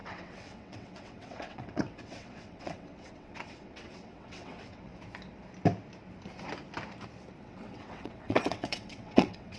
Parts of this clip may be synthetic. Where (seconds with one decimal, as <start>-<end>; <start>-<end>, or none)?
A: 0.0-4.9; 7.4-9.6